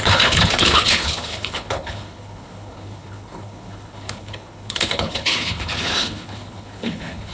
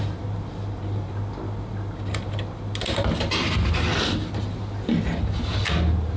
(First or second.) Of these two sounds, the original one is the second